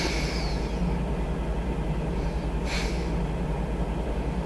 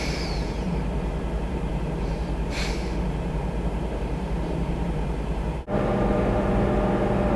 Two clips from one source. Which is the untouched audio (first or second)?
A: first